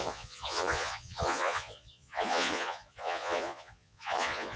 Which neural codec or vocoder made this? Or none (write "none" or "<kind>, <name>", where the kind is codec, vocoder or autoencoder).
vocoder, Vocos